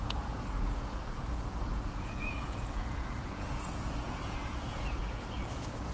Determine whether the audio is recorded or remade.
remade